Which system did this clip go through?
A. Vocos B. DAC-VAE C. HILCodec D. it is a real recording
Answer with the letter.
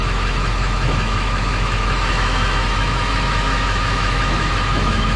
B